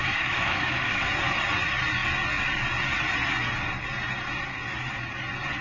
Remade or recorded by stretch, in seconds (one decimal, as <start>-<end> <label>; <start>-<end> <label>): 0.0-1.1 remade; 1.1-5.6 recorded